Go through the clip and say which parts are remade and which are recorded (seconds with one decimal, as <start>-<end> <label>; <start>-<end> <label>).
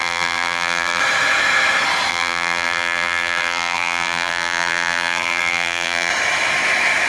0.0-1.0 remade; 1.0-2.1 recorded; 2.1-6.1 remade; 6.1-7.1 recorded